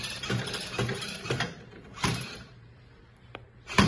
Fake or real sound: fake